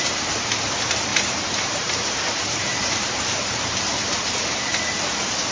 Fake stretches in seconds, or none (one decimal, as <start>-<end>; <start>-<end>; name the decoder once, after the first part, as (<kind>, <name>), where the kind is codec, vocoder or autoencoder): 1.1-4.4 (vocoder, BigVGAN v2)